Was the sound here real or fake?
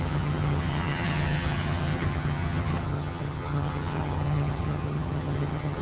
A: fake